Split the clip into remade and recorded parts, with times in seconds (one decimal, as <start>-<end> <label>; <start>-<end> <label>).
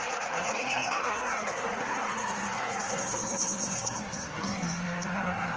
0.0-5.6 remade